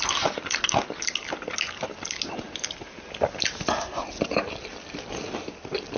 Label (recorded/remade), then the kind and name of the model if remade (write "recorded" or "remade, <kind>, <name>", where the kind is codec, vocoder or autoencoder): recorded